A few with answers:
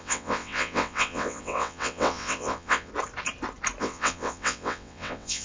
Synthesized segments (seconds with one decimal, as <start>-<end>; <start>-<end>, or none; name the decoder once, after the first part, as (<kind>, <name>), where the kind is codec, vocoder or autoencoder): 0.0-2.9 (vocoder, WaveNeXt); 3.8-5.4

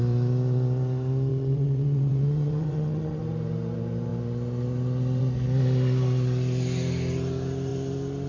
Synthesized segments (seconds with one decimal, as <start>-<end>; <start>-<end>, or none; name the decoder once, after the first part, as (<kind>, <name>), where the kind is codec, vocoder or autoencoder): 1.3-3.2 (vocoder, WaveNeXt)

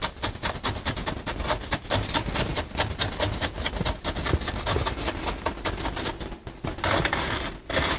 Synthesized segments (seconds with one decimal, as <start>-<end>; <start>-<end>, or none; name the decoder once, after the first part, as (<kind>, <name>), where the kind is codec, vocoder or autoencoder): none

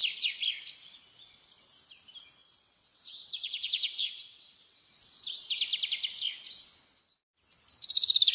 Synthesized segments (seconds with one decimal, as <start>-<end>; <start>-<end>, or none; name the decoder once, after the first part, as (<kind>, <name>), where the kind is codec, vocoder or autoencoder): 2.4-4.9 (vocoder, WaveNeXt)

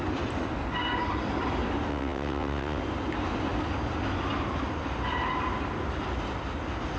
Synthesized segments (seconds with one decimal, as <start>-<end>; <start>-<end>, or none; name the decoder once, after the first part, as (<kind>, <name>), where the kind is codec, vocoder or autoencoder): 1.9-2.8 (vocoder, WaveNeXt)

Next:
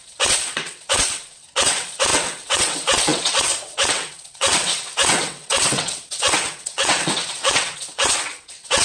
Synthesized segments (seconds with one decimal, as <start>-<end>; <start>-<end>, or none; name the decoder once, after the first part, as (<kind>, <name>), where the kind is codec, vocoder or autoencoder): 0.0-8.8 (vocoder, WaveNeXt)